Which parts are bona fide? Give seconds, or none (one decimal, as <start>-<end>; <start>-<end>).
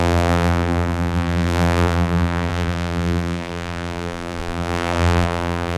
none